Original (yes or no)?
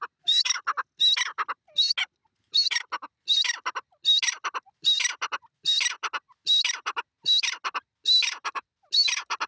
yes